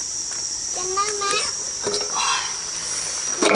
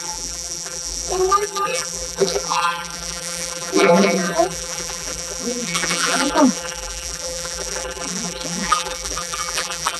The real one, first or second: first